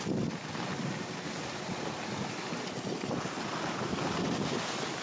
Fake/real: real